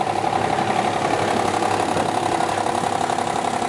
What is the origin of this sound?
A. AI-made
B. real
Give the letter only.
B